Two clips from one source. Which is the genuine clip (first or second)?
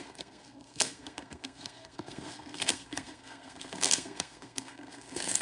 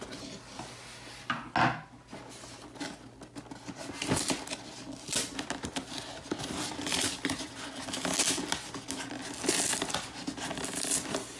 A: second